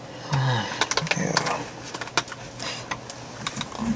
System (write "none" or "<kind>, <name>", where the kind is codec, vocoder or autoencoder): none